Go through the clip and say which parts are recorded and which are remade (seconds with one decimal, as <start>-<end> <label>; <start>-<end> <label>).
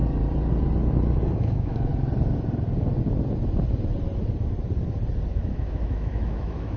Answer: 0.0-1.3 recorded; 1.3-1.9 remade; 1.9-5.3 recorded; 5.3-6.8 remade